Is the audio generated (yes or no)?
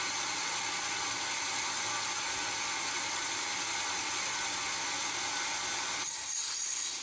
no